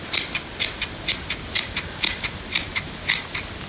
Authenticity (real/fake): real